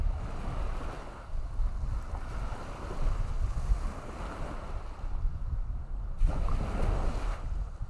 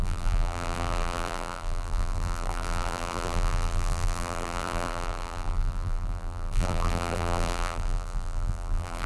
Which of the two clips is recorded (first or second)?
first